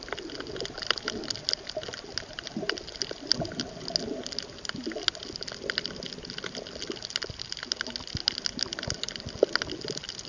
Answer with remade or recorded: recorded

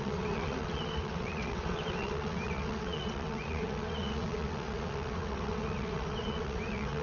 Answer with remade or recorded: remade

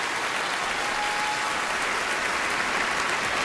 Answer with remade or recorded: recorded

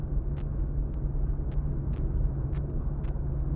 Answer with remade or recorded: recorded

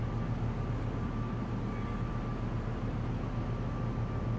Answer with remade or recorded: recorded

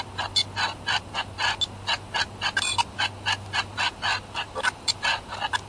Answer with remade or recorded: recorded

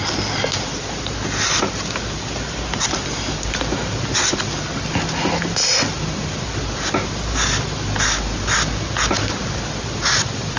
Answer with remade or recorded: recorded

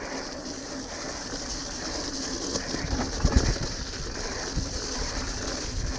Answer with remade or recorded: recorded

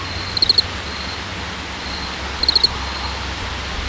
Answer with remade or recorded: recorded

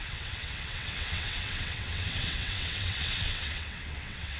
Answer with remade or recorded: remade